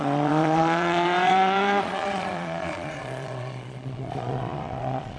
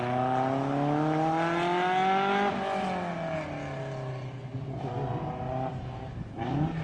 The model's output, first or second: first